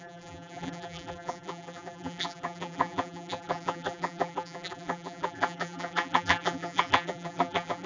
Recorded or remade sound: remade